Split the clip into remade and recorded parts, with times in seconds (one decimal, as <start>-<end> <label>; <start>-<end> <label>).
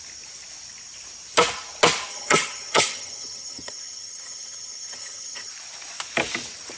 0.0-2.1 recorded; 2.1-5.5 remade; 5.5-6.8 recorded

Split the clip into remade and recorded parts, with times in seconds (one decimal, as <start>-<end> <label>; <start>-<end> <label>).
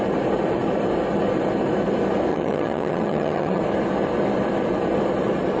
0.0-2.3 recorded; 2.3-3.6 remade; 3.6-5.6 recorded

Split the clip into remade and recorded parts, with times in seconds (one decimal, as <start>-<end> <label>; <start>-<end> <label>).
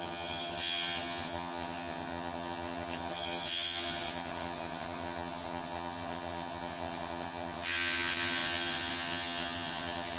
0.0-10.2 remade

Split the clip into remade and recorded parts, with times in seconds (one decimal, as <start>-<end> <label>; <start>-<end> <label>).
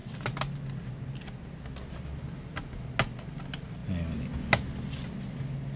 0.0-5.8 recorded